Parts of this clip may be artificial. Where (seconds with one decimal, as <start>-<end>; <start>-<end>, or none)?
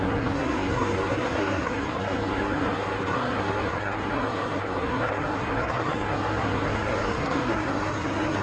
0.0-8.4